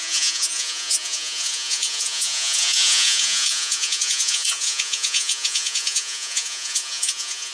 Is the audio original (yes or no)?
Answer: no